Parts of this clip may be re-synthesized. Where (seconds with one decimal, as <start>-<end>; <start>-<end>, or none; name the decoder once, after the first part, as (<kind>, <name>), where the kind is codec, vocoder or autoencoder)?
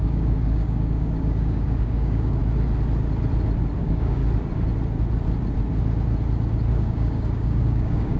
0.0-2.4 (codec, DAC); 3.8-4.2; 6.7-8.2